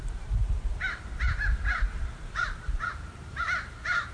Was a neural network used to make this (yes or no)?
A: yes